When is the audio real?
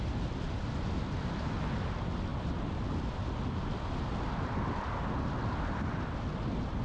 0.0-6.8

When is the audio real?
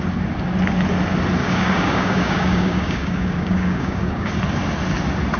0.0-1.4; 4.3-5.4